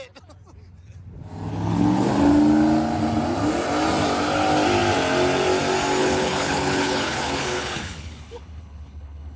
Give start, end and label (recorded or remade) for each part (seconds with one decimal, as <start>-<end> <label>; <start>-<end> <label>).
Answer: 0.0-1.5 recorded; 1.5-2.1 remade; 2.1-6.0 recorded; 6.0-9.4 remade